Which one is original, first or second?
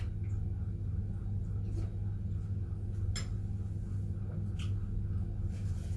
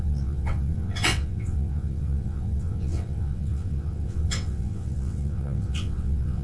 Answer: first